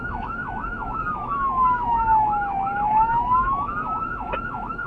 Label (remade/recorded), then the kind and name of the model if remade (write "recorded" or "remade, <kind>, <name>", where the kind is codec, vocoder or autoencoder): remade, autoencoder, DAC-VAE